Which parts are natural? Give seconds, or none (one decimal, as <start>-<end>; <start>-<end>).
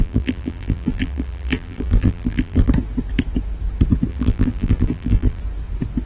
2.7-4.1; 5.4-6.1